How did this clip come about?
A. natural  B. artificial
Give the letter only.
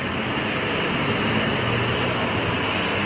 B